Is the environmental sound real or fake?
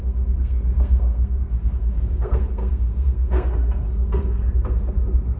fake